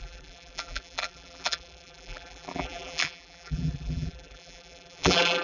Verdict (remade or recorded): remade